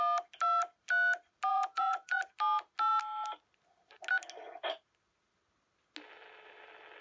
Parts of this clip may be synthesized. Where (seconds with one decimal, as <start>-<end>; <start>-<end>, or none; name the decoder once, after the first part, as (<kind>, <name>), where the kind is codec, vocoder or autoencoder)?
1.5-2.2 (vocoder, Vocos)